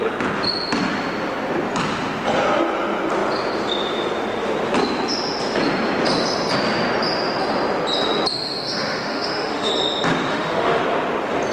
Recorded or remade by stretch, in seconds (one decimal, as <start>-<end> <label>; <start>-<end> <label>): 0.0-8.3 recorded; 8.3-9.7 remade; 9.7-10.3 recorded; 10.3-10.8 remade; 10.8-11.5 recorded